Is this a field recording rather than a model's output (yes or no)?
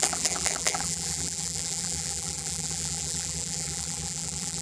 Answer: no